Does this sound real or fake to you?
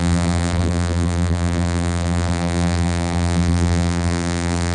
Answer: fake